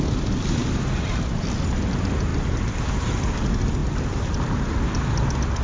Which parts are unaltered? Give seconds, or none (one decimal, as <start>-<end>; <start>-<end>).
0.0-5.6